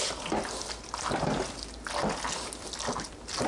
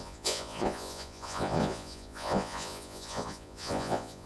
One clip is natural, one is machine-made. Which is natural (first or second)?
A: first